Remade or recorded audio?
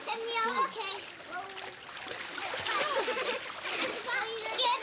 recorded